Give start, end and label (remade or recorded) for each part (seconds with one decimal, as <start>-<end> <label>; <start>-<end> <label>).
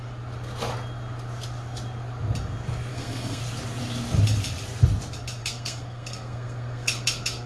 0.0-2.9 recorded; 2.9-3.4 remade; 3.4-5.4 recorded; 5.4-7.5 remade